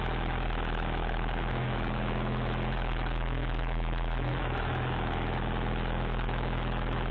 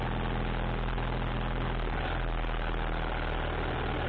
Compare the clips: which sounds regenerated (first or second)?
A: first